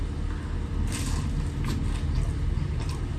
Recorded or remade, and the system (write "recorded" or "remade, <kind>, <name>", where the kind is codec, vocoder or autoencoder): recorded